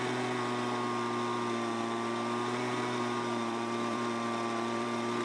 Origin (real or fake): fake